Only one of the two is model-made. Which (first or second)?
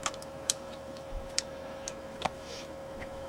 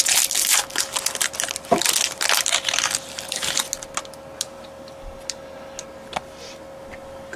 first